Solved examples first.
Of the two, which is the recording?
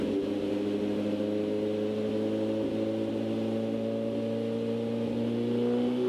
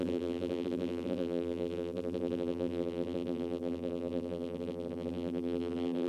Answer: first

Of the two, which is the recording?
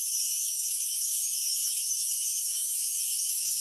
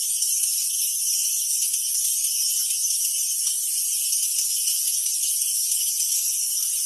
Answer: second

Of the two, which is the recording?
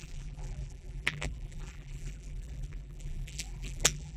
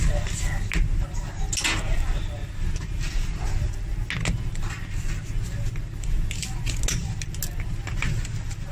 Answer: second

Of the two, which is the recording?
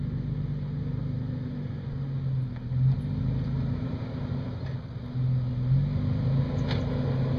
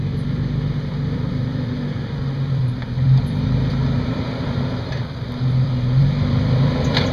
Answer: first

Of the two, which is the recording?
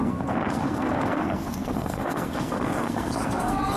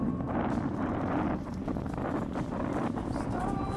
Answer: second